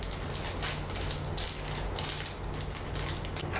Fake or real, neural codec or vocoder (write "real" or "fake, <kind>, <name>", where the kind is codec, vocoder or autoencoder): real